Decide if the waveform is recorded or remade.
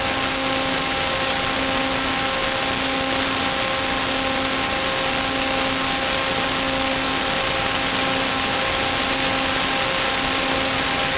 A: recorded